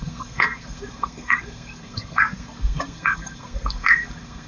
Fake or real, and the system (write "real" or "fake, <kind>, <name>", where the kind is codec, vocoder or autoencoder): fake, codec, SNAC